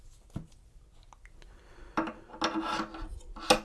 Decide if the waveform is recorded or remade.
recorded